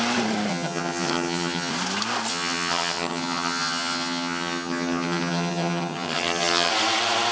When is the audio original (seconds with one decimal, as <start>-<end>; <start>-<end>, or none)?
0.0-0.5; 1.7-2.3; 6.7-7.3